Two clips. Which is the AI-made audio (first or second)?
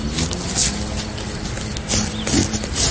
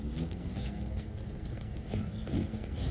second